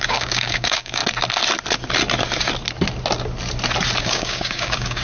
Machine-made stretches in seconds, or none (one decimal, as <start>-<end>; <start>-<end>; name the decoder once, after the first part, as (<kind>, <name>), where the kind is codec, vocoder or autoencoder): 0.0-1.0 (codec, DAC); 4.0-5.0